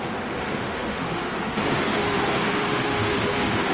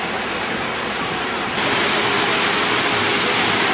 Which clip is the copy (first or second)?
first